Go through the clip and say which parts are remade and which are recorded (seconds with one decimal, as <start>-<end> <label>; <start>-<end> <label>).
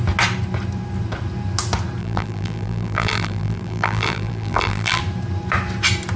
0.0-2.0 recorded; 2.0-5.0 remade; 5.0-6.2 recorded